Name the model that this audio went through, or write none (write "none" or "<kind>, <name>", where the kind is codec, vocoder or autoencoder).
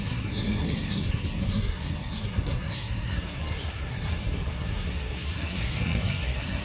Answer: codec, SNAC